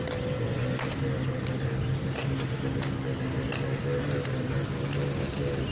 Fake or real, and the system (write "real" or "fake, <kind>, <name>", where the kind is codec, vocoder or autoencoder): real